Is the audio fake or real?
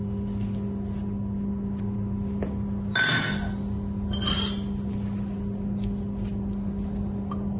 real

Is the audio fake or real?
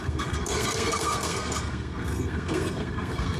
fake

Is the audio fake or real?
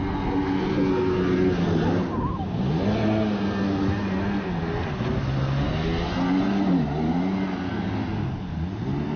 real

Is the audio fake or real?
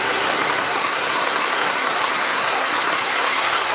fake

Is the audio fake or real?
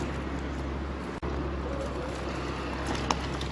real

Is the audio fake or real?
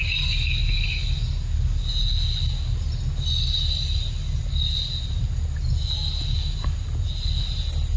real